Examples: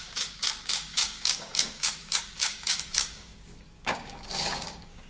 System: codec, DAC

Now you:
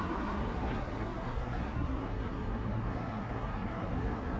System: codec, SNAC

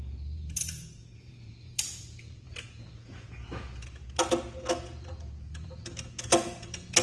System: vocoder, Vocos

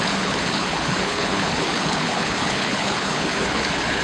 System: codec, HILCodec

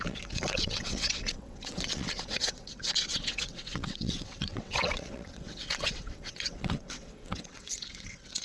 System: vocoder, WaveNeXt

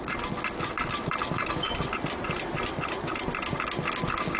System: none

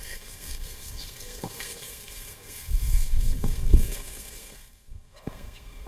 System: codec, SNAC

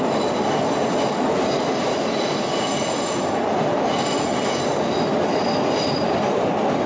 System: none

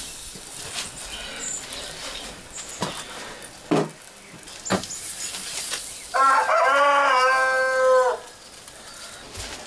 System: none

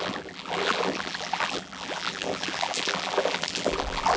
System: vocoder, BigVGAN v2